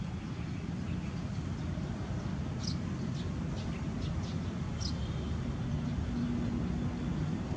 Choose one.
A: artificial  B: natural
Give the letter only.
B